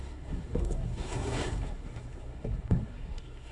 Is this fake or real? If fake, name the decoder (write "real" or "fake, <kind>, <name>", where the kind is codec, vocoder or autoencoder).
fake, codec, SNAC